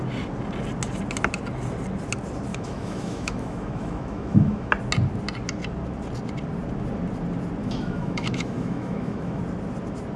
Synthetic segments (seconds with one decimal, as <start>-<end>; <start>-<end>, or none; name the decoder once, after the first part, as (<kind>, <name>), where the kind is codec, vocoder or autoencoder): 2.5-4.7 (autoencoder, DAC-VAE); 7.6-9.4